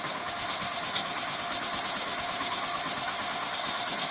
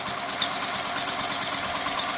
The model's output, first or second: first